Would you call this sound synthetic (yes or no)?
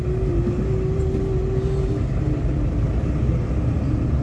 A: no